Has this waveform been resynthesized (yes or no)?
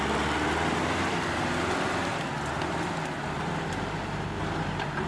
no